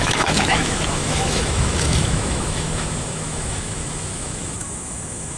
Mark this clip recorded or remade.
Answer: remade